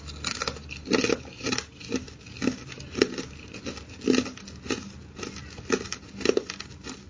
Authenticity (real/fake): real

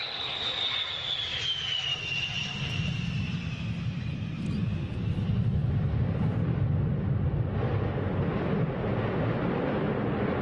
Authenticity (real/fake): real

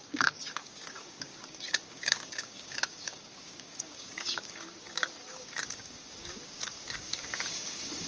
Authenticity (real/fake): fake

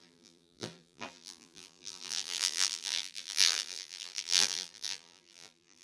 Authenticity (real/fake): fake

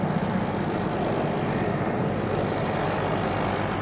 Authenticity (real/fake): real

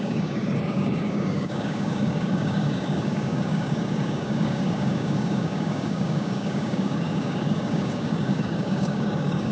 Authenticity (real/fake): fake